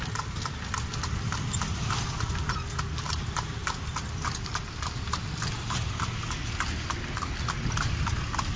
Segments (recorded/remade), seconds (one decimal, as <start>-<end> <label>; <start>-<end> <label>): 0.0-8.6 recorded